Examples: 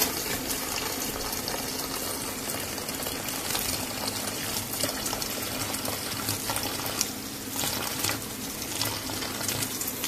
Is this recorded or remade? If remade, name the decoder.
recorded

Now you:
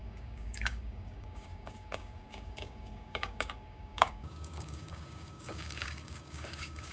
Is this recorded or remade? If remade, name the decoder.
remade, codec, DAC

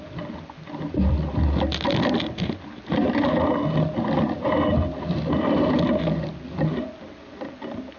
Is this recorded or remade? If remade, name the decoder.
recorded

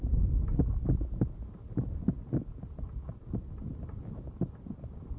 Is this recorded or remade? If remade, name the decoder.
recorded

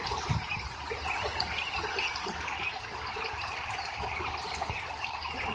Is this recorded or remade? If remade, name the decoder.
recorded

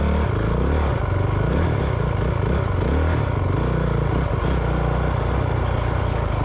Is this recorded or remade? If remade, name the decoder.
recorded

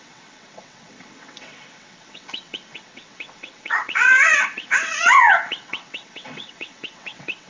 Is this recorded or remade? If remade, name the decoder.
remade, vocoder, WaveNeXt